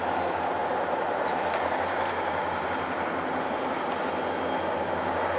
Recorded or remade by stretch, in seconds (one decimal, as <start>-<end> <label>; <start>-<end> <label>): 0.0-0.6 recorded; 0.6-3.8 remade; 3.8-5.4 recorded